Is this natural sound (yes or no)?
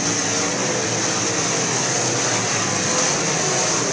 yes